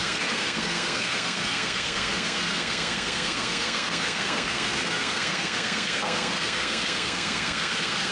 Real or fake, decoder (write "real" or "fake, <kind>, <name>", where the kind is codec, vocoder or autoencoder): fake, codec, SNAC